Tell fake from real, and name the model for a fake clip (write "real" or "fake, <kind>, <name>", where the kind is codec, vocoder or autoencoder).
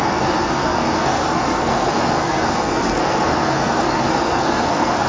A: fake, codec, SNAC